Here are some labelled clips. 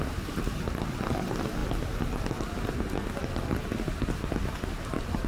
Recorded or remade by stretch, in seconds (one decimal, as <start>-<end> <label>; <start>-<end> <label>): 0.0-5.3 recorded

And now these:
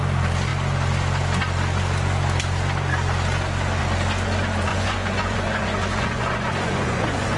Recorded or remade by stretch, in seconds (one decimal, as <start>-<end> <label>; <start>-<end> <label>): 0.0-4.7 recorded; 4.7-7.4 remade

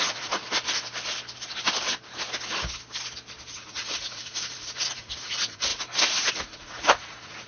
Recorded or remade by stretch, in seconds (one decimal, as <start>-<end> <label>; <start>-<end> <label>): 0.0-0.4 remade; 0.4-3.5 recorded; 3.5-5.7 remade; 5.7-6.3 recorded; 6.3-7.5 remade